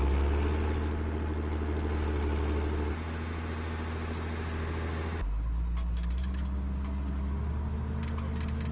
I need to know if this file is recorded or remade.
recorded